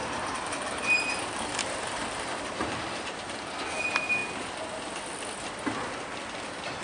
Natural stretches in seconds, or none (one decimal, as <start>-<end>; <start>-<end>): 3.4-6.8